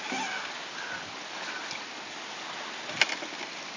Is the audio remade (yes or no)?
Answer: no